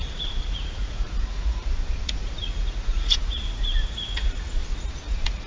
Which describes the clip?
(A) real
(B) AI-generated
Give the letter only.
B